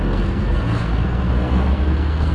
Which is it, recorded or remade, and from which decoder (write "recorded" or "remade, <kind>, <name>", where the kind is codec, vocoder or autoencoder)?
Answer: remade, codec, SNAC